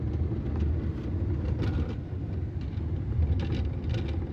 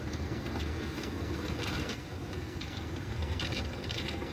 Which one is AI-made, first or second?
second